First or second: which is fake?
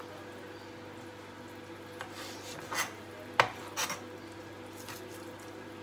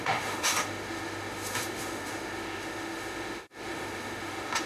second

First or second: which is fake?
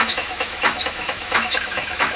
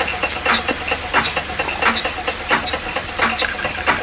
first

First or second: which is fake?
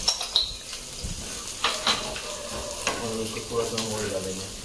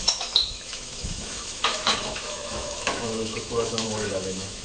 second